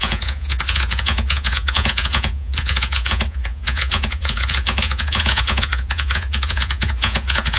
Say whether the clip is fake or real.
fake